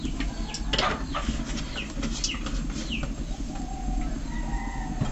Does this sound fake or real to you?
real